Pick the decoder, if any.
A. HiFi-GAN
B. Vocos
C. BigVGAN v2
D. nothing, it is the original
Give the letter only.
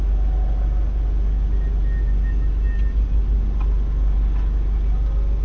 D